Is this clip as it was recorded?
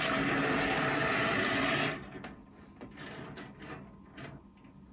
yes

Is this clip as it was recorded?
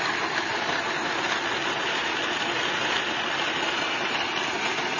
yes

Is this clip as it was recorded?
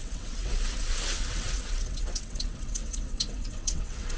no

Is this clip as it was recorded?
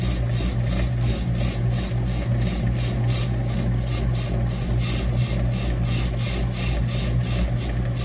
yes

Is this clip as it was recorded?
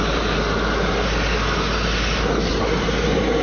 yes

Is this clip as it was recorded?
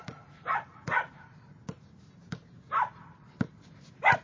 no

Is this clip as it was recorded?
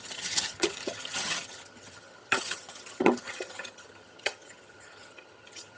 no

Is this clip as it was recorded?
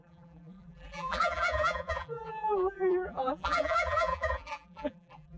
no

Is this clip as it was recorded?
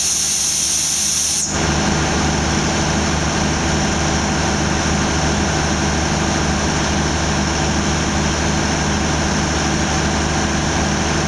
yes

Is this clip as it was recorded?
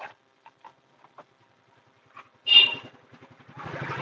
yes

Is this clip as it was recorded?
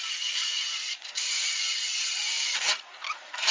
no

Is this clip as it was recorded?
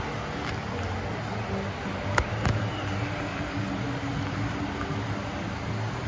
yes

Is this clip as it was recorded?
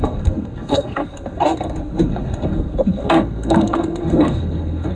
no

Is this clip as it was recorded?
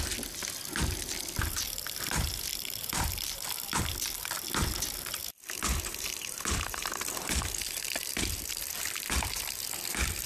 no